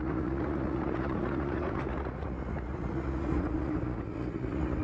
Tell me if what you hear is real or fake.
fake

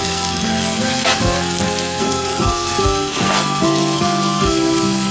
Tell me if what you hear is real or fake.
fake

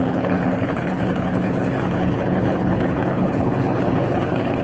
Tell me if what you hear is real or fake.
fake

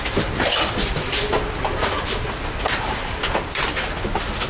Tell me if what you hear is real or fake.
fake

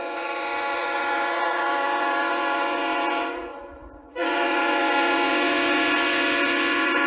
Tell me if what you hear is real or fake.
fake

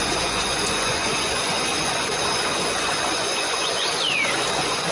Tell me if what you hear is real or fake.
fake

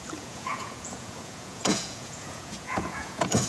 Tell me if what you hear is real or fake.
fake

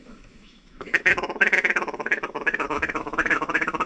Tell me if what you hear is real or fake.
fake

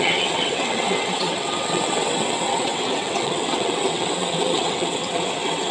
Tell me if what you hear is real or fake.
fake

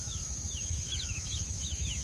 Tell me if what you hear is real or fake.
fake